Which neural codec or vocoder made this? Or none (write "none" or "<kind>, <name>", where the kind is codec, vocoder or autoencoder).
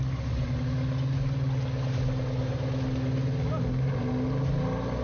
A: none